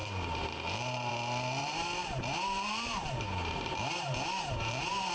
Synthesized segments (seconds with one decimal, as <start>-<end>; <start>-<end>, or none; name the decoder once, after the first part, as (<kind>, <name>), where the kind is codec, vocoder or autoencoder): 0.0-1.1 (vocoder, BigVGAN v2); 1.6-5.1